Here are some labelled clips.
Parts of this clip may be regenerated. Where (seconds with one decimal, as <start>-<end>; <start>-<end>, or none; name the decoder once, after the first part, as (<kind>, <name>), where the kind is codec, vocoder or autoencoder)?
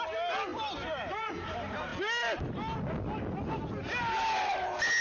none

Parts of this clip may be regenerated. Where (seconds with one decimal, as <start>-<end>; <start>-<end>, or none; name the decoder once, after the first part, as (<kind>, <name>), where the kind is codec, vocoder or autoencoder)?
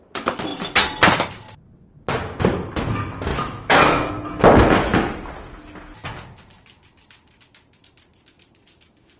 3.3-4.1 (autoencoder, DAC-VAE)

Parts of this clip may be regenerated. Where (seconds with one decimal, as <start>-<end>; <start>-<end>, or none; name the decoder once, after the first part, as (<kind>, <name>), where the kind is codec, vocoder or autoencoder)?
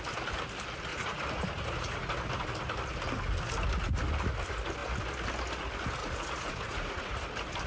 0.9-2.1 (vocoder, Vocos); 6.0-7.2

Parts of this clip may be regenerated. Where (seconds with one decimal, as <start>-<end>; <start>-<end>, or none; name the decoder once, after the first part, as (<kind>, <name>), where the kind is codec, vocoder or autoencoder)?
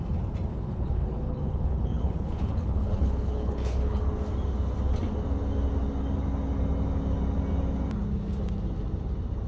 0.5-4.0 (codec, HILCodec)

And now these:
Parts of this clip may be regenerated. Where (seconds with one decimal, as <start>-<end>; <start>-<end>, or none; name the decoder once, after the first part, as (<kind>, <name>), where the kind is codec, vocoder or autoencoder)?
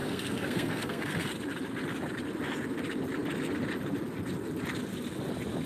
0.0-1.3 (codec, SNAC)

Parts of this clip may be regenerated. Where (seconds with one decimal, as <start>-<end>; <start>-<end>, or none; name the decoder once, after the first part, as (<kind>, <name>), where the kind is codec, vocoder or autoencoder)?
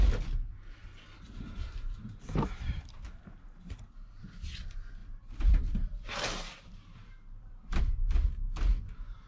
0.8-4.2 (vocoder, BigVGAN v2); 5.0-7.8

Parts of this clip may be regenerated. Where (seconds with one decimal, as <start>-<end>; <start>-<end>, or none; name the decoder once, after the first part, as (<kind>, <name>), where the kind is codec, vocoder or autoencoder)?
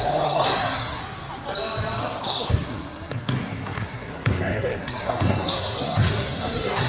0.0-1.0 (codec, SNAC); 2.0-6.9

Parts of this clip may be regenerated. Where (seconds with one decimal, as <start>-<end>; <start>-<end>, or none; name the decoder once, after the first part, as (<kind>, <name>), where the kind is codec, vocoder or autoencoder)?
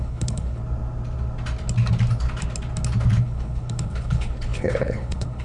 0.0-0.6 (codec, HILCodec); 3.2-5.4